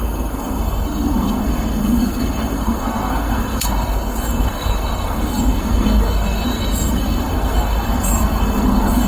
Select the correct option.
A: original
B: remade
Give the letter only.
B